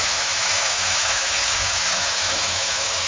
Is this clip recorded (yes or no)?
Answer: no